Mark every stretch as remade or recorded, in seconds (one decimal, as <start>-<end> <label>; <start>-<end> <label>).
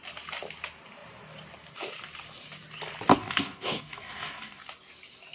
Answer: 0.0-3.1 recorded; 3.1-4.6 remade; 4.6-5.3 recorded